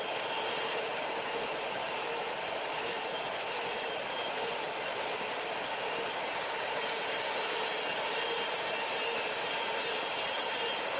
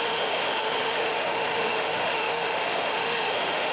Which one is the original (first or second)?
first